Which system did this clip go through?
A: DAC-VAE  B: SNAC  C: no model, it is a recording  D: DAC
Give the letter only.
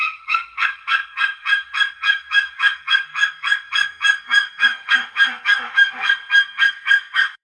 B